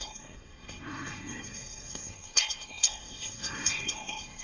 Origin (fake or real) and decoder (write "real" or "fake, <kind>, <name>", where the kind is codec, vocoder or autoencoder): fake, codec, SNAC